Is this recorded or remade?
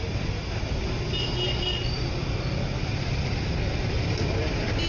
recorded